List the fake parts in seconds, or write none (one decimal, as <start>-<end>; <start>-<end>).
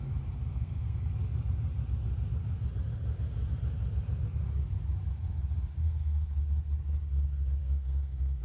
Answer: 0.5-1.0; 5.8-6.4; 7.6-8.4